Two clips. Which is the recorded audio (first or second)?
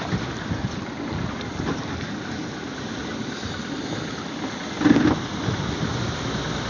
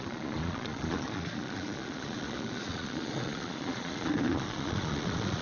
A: first